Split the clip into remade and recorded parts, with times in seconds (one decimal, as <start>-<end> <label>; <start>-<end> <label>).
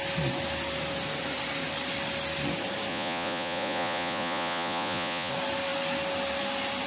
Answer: 0.0-2.9 recorded; 2.9-5.3 remade; 5.3-6.9 recorded